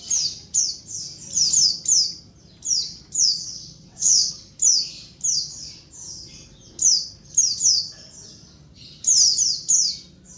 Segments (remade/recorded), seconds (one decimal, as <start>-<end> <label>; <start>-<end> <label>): 0.0-3.4 recorded; 3.4-4.3 remade; 4.3-10.4 recorded